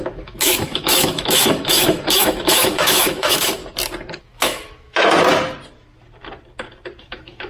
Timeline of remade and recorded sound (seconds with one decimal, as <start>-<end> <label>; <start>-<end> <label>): 0.0-3.6 remade; 3.6-4.2 recorded; 4.2-5.1 remade; 5.1-7.0 recorded; 7.0-7.5 remade